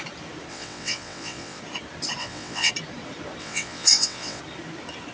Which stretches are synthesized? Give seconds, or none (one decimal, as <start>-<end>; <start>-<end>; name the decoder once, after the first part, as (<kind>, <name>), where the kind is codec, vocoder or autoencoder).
0.5-1.6 (vocoder, WaveNeXt); 2.2-2.7; 3.4-4.4